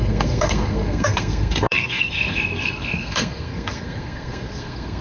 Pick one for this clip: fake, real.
fake